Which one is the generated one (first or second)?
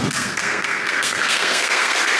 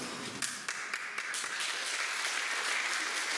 first